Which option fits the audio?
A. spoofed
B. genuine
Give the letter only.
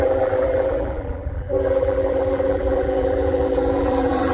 A